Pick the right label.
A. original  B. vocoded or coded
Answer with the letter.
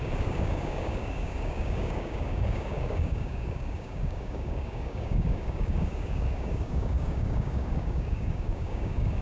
B